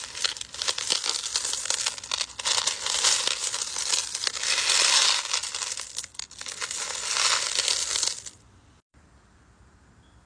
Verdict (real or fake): real